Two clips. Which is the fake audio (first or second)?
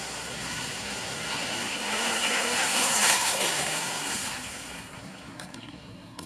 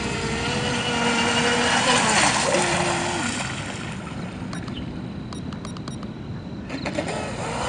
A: first